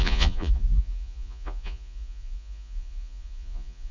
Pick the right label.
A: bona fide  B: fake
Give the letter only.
B